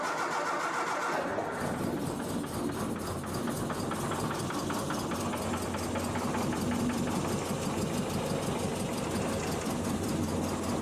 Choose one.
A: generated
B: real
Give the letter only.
B